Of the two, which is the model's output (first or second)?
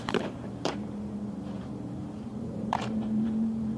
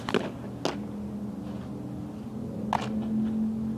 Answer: first